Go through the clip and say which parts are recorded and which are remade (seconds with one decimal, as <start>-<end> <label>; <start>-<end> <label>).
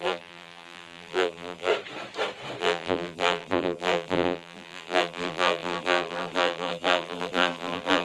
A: 0.0-1.7 remade; 1.7-2.6 recorded; 2.6-8.0 remade